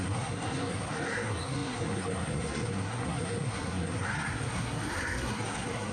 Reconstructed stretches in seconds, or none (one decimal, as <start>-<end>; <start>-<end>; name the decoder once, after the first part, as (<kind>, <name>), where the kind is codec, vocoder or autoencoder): 0.0-5.9 (codec, SNAC)